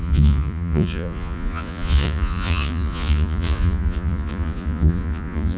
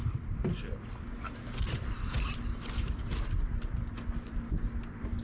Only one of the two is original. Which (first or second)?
second